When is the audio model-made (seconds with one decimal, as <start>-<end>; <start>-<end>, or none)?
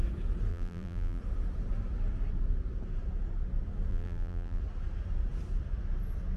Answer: 0.5-1.2; 3.9-4.6